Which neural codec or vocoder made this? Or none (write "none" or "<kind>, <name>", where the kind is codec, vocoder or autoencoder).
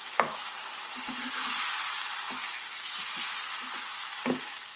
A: none